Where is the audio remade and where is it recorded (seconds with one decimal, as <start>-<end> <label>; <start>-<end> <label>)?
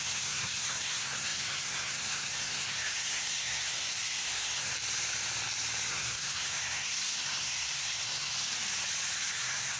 0.0-4.7 remade; 4.7-5.9 recorded; 5.9-8.3 remade; 8.3-9.3 recorded; 9.3-9.8 remade